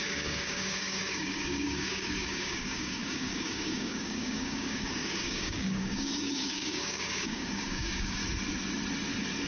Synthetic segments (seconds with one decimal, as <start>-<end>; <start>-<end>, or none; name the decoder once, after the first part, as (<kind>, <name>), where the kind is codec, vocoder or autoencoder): 0.0-8.2 (codec, DAC)